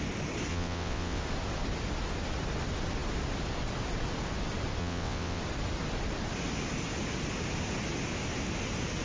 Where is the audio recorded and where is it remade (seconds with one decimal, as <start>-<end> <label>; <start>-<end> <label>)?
0.0-0.5 recorded; 0.5-1.2 remade; 1.2-4.8 recorded; 4.8-5.4 remade; 5.4-9.0 recorded